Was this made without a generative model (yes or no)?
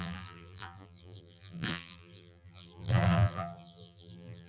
no